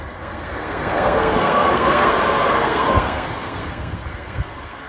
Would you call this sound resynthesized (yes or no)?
yes